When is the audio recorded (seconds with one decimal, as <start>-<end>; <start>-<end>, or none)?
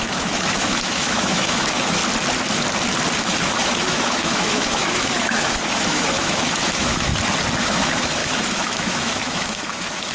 2.0-3.2; 7.1-7.6